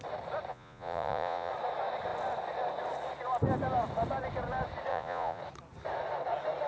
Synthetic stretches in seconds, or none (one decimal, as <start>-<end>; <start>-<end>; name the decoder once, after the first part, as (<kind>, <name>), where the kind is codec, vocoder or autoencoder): 0.5-1.5 (vocoder, Vocos); 4.9-5.4